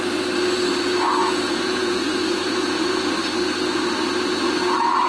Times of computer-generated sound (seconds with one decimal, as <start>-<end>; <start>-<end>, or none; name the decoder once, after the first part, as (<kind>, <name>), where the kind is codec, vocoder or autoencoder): 1.2-3.1 (vocoder, Vocos)